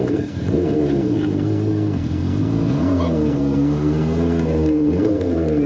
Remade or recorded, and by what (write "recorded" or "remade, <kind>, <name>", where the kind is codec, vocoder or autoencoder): remade, codec, SNAC